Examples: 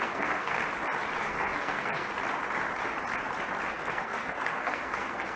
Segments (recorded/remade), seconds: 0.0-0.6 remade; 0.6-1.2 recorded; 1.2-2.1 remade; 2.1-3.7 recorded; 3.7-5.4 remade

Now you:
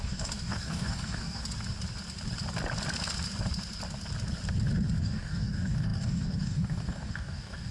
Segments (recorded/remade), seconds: 0.0-1.4 remade; 1.4-5.0 recorded; 5.0-7.7 remade

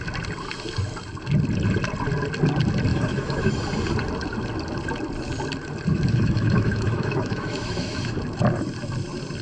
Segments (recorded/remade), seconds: 0.0-2.9 recorded; 2.9-3.6 remade; 3.6-5.9 recorded; 5.9-8.2 remade; 8.2-9.4 recorded

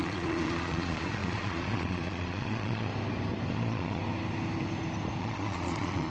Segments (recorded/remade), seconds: 0.0-2.9 remade; 2.9-3.5 recorded; 3.5-4.0 remade; 4.0-5.2 recorded; 5.2-6.1 remade

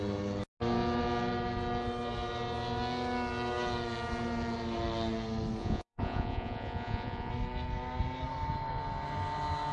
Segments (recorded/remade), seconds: 0.0-5.6 recorded; 5.6-7.3 remade; 7.3-9.7 recorded